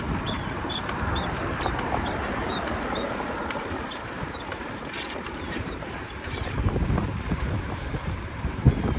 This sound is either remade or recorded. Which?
remade